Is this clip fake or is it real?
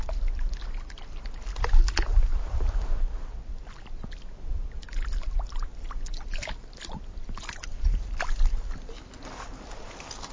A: real